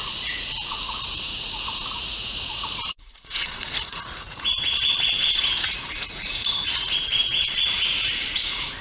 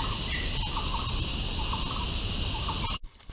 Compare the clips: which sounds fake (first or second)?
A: first